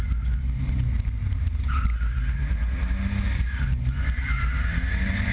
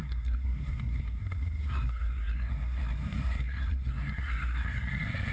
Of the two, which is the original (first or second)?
first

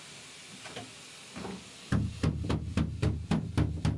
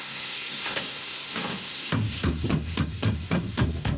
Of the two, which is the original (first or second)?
first